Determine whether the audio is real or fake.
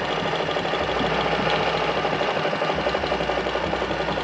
real